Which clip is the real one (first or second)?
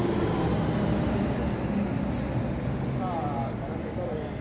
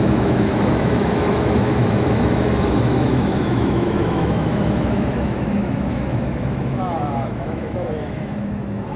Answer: first